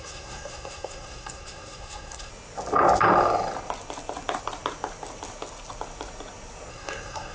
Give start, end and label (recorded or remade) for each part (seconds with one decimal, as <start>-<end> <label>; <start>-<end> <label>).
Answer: 0.0-2.3 remade; 2.3-6.7 recorded; 6.7-7.3 remade